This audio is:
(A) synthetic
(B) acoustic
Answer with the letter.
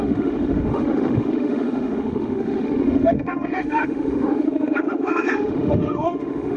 A